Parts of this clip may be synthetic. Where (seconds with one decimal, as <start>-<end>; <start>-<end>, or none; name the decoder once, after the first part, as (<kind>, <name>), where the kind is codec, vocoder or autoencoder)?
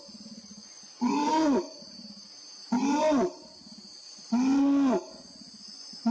0.0-1.3 (vocoder, Vocos); 5.0-6.1